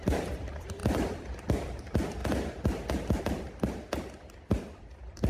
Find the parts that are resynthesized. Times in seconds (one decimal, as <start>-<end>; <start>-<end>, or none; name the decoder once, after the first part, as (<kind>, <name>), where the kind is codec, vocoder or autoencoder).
0.0-2.2 (vocoder, BigVGAN v2); 3.2-5.3